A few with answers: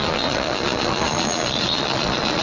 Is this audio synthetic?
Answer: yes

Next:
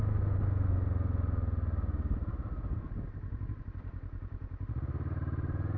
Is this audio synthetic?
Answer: no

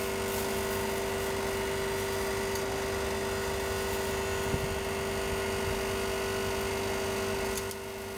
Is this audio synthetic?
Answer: no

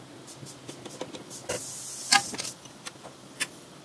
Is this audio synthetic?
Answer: no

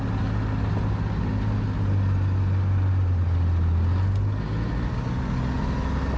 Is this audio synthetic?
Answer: no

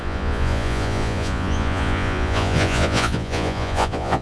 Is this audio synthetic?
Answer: yes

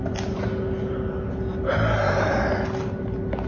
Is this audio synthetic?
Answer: no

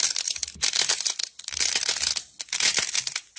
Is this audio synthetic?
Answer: no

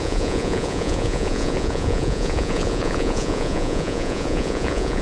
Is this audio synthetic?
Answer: yes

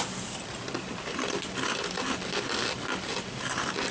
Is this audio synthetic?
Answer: no